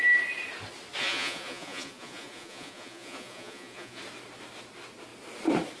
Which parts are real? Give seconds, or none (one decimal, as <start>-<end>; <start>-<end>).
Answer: 0.0-1.0; 4.0-5.8

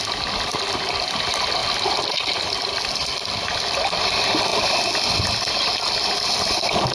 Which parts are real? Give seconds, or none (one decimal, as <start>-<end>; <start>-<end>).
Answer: 0.0-6.9